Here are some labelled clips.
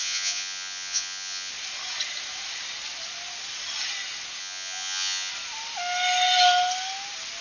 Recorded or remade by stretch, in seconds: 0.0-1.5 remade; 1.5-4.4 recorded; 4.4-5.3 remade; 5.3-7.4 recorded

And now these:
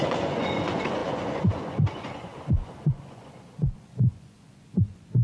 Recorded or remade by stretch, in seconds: 0.0-5.2 remade

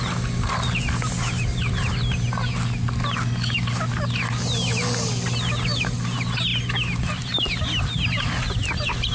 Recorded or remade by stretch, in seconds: 0.0-9.1 recorded

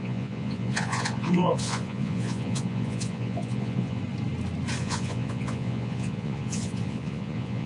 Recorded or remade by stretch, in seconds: 0.0-4.0 remade; 4.0-4.8 recorded; 4.8-7.7 remade

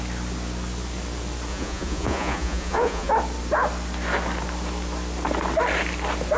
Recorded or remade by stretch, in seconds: 0.0-1.5 recorded; 1.5-3.1 remade; 3.1-6.4 recorded

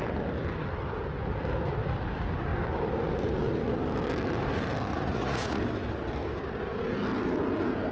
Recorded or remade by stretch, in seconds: 0.0-4.9 recorded; 4.9-5.6 remade; 5.6-7.9 recorded

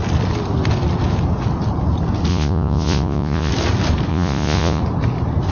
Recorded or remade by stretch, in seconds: 0.0-2.3 recorded; 2.3-3.5 remade; 3.5-4.1 recorded; 4.1-4.8 remade; 4.8-5.5 recorded